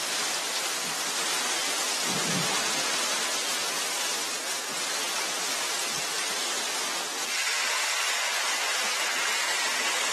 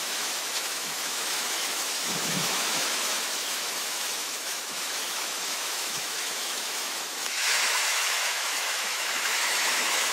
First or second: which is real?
first